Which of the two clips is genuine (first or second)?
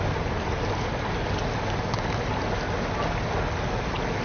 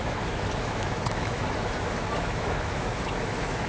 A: first